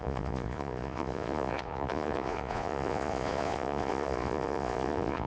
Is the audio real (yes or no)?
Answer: no